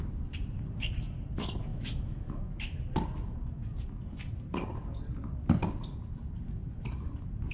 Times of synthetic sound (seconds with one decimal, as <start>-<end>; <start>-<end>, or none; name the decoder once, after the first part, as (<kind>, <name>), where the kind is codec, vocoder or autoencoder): 1.7-2.4 (autoencoder, DAC-VAE)